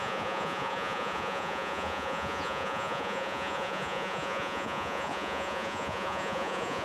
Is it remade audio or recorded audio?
remade